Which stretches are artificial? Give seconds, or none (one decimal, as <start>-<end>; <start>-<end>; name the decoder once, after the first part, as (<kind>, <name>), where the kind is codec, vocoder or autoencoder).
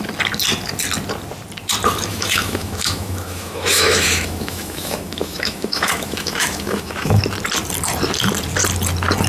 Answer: 2.1-7.2 (autoencoder, DAC-VAE)